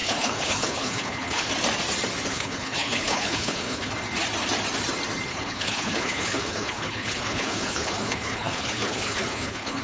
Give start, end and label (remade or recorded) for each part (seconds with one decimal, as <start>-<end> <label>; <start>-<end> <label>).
0.0-1.5 remade; 1.5-2.3 recorded; 2.3-3.9 remade; 3.9-5.3 recorded; 5.3-9.8 remade

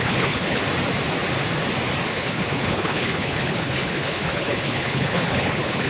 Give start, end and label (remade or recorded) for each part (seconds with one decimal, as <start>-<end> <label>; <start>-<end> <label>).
0.0-0.6 remade; 0.6-2.1 recorded; 2.1-5.9 remade

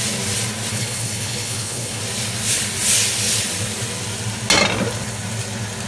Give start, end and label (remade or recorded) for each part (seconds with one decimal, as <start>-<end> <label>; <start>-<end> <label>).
0.0-0.7 recorded; 0.7-2.0 remade; 2.0-5.9 recorded

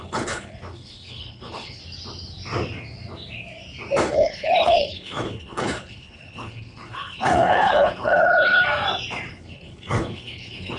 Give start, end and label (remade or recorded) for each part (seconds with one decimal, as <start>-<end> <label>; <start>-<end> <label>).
0.0-1.8 remade; 1.8-4.0 recorded; 4.0-8.6 remade; 8.6-9.3 recorded; 9.3-10.8 remade

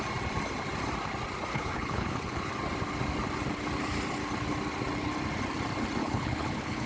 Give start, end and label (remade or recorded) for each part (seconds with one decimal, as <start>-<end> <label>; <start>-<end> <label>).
0.0-1.5 recorded; 1.5-2.5 remade; 2.5-6.0 recorded; 6.0-6.9 remade

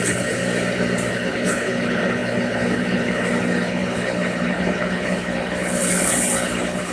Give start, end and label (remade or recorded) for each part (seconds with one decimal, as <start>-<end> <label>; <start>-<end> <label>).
0.0-0.4 remade; 0.4-1.1 recorded; 1.1-6.9 remade